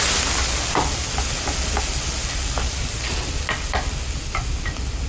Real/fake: real